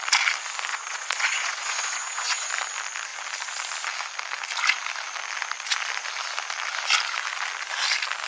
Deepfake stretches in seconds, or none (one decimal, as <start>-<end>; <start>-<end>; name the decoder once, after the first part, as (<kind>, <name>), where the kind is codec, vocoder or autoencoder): 0.7-2.5 (vocoder, Vocos)